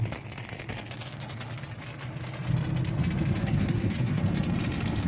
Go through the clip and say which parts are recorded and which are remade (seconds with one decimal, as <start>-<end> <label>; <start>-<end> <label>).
0.0-3.4 recorded; 3.4-4.2 remade; 4.2-5.1 recorded